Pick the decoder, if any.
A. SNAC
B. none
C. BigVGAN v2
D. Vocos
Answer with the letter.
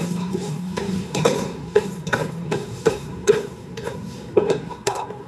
A